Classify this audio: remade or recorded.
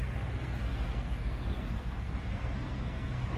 remade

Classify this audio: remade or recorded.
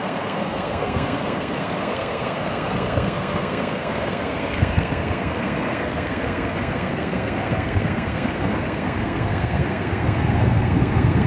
remade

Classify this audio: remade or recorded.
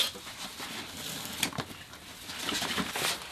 recorded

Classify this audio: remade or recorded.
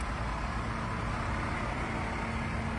recorded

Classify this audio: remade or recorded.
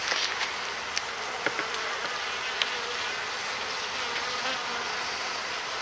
recorded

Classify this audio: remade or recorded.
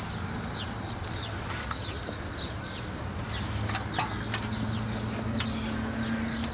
recorded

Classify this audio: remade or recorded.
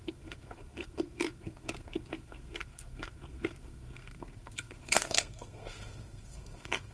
remade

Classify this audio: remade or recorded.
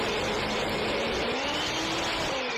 recorded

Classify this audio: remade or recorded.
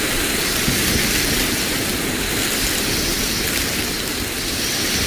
recorded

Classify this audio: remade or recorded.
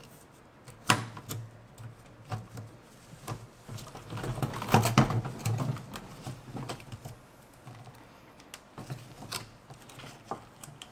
recorded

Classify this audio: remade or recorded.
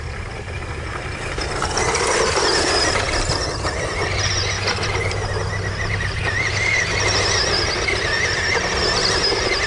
recorded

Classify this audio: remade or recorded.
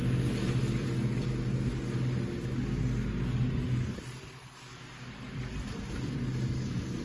recorded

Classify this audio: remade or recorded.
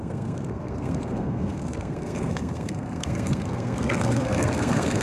remade